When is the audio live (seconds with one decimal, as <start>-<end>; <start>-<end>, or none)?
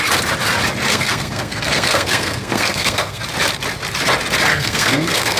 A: 0.0-0.9; 3.2-4.5